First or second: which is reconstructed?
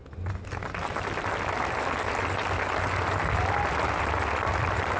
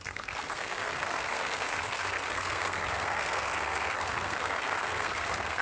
second